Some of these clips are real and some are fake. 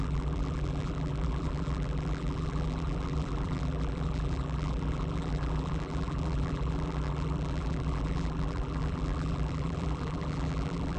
fake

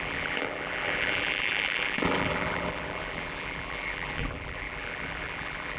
fake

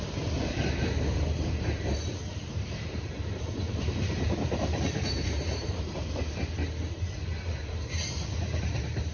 fake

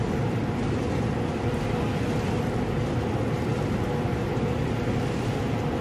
real